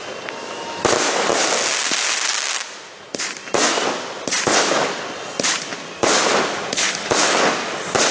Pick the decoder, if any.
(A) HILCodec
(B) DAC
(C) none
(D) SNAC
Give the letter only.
C